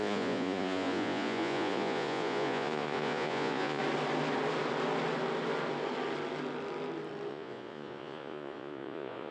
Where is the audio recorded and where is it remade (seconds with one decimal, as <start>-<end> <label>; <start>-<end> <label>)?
0.0-3.8 remade; 3.8-7.3 recorded; 7.3-9.3 remade

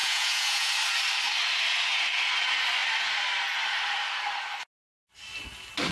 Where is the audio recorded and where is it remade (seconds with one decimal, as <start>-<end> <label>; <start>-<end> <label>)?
0.0-0.7 remade; 0.7-5.9 recorded